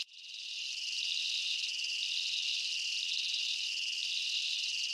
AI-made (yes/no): no